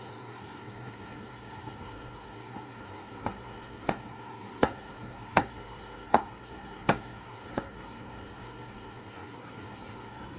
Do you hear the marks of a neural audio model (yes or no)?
yes